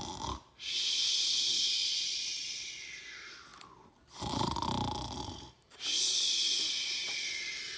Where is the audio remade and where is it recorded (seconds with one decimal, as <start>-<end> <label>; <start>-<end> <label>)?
0.0-7.8 recorded

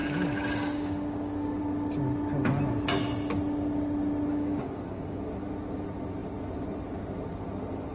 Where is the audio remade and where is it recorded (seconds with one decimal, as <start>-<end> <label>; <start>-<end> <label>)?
0.0-1.6 remade; 1.6-4.3 recorded; 4.3-5.2 remade; 5.2-7.9 recorded

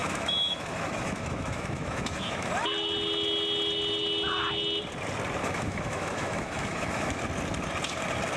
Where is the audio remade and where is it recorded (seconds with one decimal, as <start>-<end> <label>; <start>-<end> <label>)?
0.0-2.5 remade; 2.5-5.4 recorded; 5.4-7.2 remade; 7.2-8.4 recorded

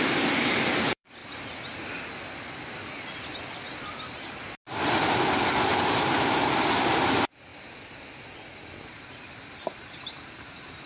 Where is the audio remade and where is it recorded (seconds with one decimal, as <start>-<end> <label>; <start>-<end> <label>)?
0.0-1.2 remade; 1.2-6.2 recorded; 6.2-7.5 remade; 7.5-9.1 recorded; 9.1-10.9 remade